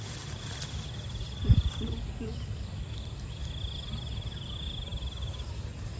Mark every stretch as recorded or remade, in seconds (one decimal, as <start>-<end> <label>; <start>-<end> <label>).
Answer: 0.0-6.0 recorded